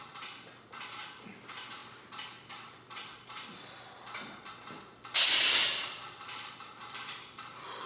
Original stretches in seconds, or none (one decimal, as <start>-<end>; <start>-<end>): 0.0-7.9